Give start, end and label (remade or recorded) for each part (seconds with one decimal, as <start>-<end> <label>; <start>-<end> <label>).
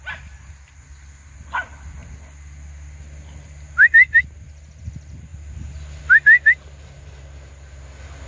0.0-8.3 recorded